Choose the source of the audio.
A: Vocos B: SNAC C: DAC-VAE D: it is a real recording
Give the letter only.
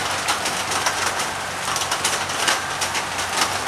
D